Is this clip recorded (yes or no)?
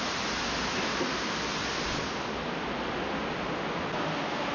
yes